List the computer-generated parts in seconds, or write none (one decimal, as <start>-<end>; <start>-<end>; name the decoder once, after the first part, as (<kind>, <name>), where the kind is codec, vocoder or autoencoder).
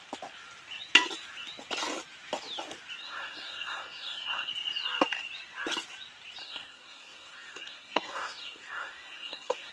3.0-4.5 (codec, SNAC); 6.4-9.7